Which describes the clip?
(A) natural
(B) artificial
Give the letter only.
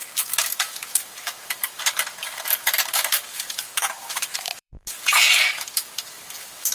B